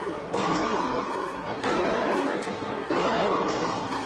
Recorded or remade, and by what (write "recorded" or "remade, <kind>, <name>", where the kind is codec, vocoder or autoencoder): remade, codec, SNAC